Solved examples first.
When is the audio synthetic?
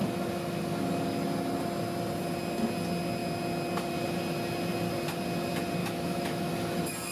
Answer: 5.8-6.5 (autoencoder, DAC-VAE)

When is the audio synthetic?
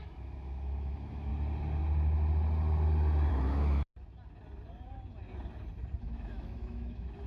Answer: 0.0-1.3 (autoencoder, DAC-VAE); 3.3-3.9; 6.0-7.3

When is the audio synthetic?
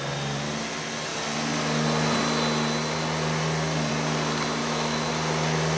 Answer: 4.6-5.1 (autoencoder, DAC-VAE)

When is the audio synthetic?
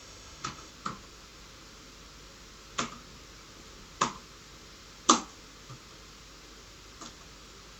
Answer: 0.0-0.7 (autoencoder, DAC-VAE)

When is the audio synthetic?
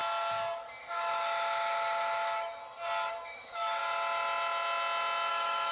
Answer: 0.8-2.6 (autoencoder, DAC-VAE); 3.1-3.8; 5.3-5.7